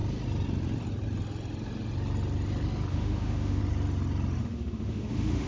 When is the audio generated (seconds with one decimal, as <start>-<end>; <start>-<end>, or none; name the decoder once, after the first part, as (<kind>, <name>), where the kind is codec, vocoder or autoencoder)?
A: 2.9-3.6 (autoencoder, DAC-VAE); 4.4-5.5